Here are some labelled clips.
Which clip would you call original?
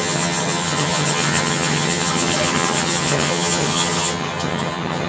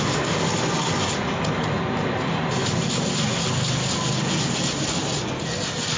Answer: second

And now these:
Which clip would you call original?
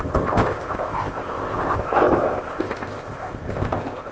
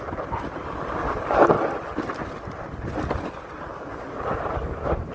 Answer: second